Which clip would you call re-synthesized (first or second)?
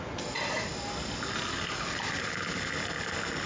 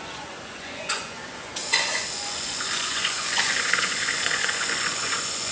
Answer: second